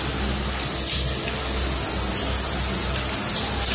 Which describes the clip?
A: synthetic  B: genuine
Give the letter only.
B